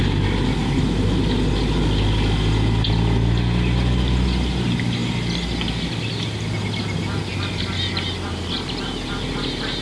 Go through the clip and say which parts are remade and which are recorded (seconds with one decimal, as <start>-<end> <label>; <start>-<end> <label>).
0.0-9.8 recorded